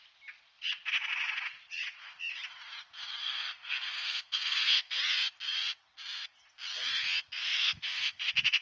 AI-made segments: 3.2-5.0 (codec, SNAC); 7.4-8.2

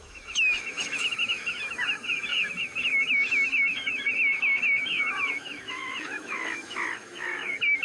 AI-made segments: 0.0-7.8 (autoencoder, DAC-VAE)

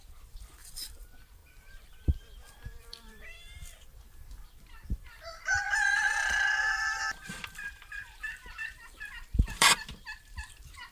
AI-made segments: 0.0-3.9 (vocoder, BigVGAN v2); 4.5-10.9

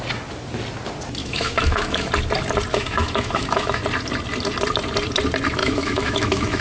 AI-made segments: 1.2-2.1 (autoencoder, DAC-VAE); 2.7-3.8; 5.6-6.6

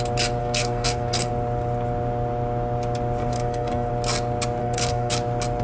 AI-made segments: 0.4-1.3 (codec, SNAC); 3.2-3.9; 4.6-5.1